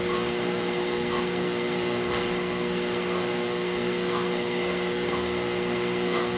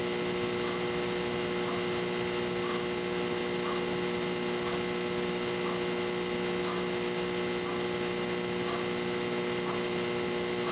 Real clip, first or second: second